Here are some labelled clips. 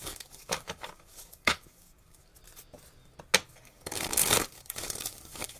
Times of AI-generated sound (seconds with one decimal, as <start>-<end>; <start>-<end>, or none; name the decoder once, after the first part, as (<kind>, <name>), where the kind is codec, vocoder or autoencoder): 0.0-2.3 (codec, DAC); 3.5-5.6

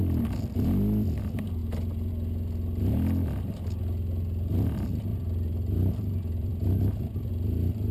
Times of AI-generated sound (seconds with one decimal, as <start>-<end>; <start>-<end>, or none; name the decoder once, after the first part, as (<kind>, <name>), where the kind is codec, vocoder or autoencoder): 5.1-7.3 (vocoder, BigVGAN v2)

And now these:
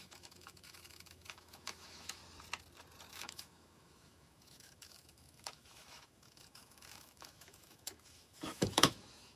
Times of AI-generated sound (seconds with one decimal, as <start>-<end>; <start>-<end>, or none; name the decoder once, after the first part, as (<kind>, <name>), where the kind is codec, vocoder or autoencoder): 0.0-2.2 (autoencoder, DAC-VAE); 3.1-9.4